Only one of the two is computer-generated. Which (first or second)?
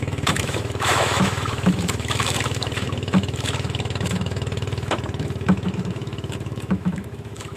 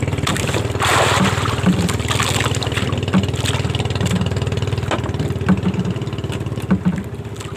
first